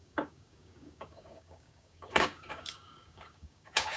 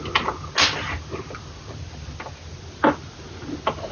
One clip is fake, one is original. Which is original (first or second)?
second